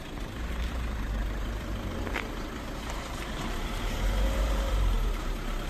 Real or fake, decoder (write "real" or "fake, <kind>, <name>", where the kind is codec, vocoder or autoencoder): fake, vocoder, BigVGAN v2